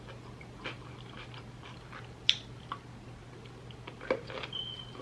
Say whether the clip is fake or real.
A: real